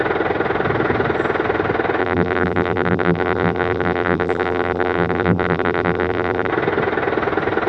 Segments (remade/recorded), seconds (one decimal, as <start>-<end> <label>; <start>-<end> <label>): 0.0-2.0 recorded; 2.0-6.5 remade; 6.5-7.7 recorded